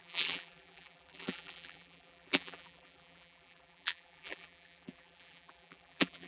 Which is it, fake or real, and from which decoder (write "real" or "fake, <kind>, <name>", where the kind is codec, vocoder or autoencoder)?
fake, vocoder, BigVGAN v2